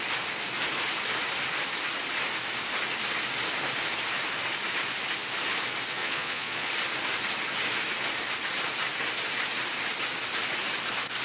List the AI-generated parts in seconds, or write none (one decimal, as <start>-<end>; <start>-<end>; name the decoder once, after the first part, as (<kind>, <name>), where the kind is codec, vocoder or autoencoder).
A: 6.0-6.7 (vocoder, Vocos)